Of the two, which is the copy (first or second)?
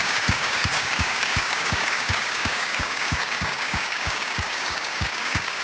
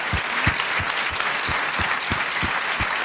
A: first